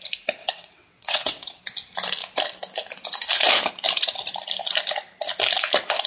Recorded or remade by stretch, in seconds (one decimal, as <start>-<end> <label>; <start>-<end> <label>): 0.0-0.4 recorded; 0.4-1.6 remade; 1.6-6.1 recorded